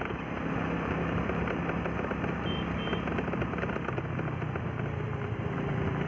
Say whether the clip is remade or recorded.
recorded